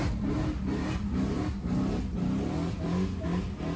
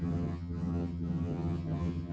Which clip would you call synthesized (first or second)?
second